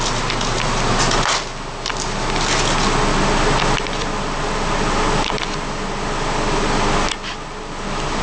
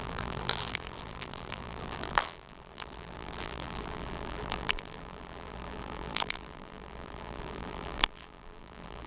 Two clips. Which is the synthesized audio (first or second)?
second